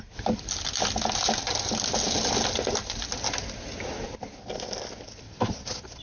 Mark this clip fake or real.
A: real